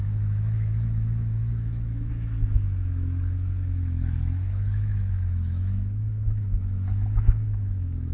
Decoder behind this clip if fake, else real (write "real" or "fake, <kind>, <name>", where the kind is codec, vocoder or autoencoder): fake, autoencoder, DAC-VAE